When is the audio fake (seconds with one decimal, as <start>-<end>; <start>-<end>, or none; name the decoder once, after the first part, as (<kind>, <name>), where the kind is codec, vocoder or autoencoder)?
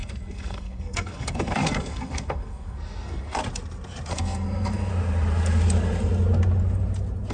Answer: 0.0-3.4 (codec, SNAC); 4.1-4.9